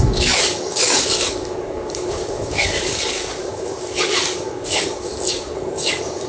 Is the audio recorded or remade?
remade